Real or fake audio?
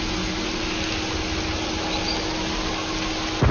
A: real